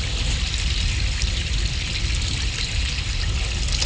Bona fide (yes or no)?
yes